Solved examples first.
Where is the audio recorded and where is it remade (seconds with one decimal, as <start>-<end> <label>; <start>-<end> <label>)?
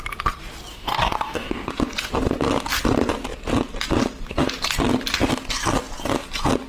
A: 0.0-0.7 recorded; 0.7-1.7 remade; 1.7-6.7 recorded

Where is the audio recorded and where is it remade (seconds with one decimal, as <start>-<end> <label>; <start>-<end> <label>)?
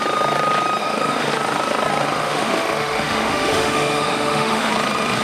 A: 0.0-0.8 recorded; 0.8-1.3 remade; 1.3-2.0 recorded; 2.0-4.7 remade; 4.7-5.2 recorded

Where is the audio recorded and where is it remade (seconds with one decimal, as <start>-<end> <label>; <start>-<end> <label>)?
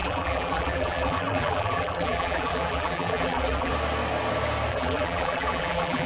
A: 0.0-3.7 remade; 3.7-4.7 recorded; 4.7-6.1 remade